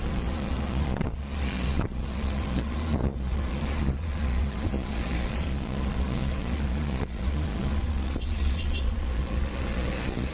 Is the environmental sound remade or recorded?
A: remade